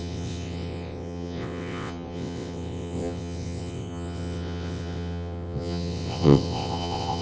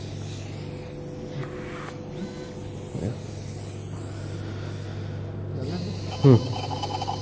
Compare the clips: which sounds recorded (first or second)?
second